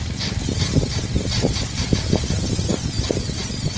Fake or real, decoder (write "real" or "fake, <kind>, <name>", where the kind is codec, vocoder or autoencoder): real